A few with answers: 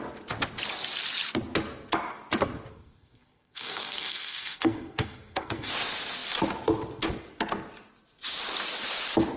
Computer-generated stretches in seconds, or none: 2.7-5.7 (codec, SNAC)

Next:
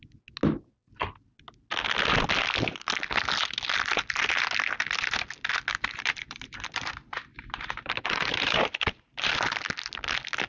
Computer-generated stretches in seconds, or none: 5.7-9.3 (vocoder, BigVGAN v2)